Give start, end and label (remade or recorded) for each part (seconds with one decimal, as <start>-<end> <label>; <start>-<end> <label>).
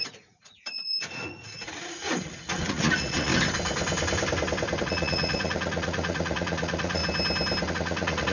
0.0-3.3 remade; 3.3-4.8 recorded; 4.8-7.0 remade; 7.0-7.7 recorded; 7.7-8.3 remade